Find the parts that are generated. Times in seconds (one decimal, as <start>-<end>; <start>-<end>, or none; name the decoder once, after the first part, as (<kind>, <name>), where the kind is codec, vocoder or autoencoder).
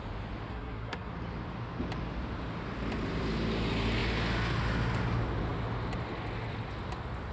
0.5-1.1 (codec, SNAC)